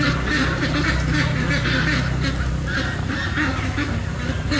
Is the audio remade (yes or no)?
no